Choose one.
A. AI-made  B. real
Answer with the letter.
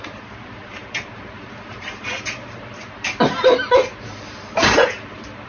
A